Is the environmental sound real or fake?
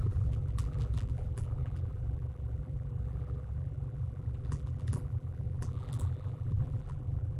fake